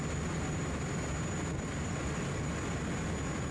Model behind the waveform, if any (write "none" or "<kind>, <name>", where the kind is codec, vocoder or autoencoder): none